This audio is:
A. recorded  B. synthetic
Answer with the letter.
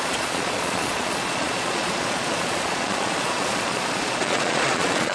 B